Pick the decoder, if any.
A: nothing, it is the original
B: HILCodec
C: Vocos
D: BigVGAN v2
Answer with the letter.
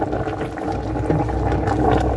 A